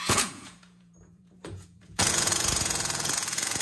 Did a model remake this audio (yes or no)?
yes